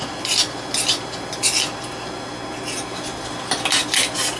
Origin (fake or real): real